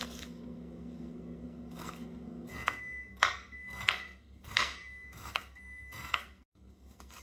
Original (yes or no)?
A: no